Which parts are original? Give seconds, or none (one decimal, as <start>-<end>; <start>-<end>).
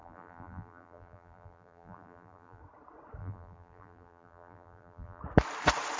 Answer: 2.6-3.2; 5.2-6.0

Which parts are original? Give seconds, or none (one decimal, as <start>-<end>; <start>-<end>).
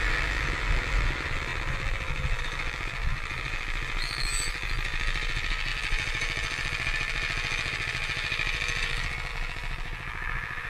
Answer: none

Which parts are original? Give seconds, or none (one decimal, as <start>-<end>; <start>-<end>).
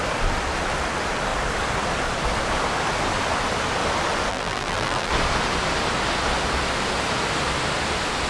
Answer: 0.0-4.3; 5.1-8.3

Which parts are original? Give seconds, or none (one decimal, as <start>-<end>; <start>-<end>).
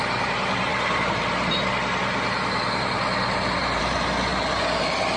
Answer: 0.0-5.2